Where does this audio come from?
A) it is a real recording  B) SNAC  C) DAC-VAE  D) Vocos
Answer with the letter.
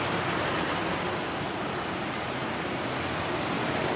A